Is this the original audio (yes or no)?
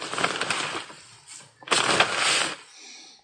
yes